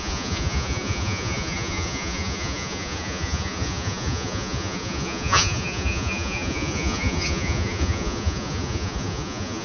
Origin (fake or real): fake